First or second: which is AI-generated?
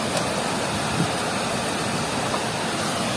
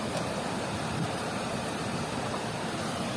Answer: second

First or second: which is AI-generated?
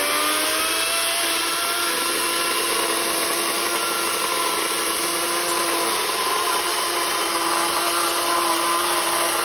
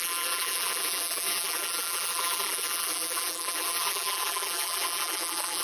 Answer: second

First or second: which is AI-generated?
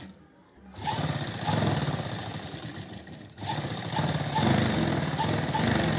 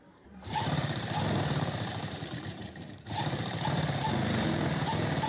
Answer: second